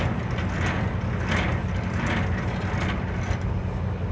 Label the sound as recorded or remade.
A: recorded